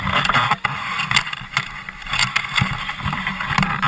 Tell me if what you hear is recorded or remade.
recorded